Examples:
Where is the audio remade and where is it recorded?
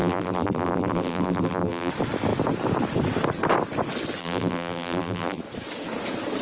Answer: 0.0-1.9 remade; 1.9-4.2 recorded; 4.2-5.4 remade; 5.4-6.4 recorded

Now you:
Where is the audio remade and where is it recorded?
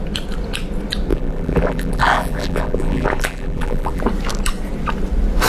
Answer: 0.0-1.1 recorded; 1.1-4.0 remade; 4.0-5.5 recorded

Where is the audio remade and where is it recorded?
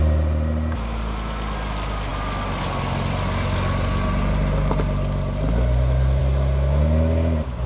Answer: 0.0-7.7 recorded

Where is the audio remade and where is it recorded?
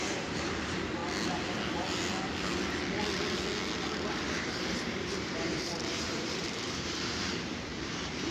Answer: 0.0-1.0 remade; 1.0-4.1 recorded; 4.1-8.3 remade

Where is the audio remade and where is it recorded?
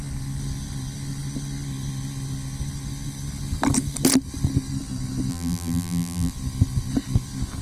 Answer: 0.0-5.3 recorded; 5.3-6.3 remade; 6.3-7.6 recorded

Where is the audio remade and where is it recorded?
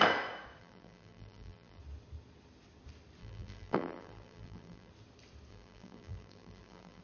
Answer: 0.0-0.6 recorded; 0.6-1.8 remade; 1.8-3.2 recorded; 3.2-4.9 remade; 4.9-5.5 recorded; 5.5-7.0 remade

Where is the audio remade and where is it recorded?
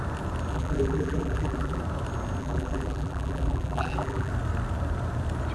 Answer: 0.0-0.5 recorded; 0.5-1.8 remade; 1.8-2.4 recorded; 2.4-4.3 remade; 4.3-5.5 recorded